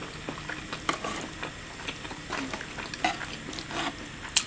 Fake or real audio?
real